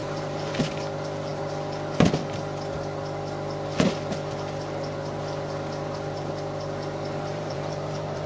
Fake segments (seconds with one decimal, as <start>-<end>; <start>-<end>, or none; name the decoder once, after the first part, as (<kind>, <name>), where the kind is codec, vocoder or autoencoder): 0.0-0.6 (vocoder, BigVGAN v2); 7.3-8.3